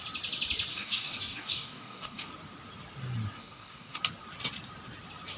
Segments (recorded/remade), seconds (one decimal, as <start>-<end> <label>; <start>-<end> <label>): 0.0-0.7 recorded; 0.7-2.3 remade; 2.3-3.4 recorded; 3.4-4.0 remade; 4.0-5.4 recorded